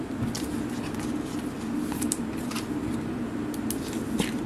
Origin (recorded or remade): recorded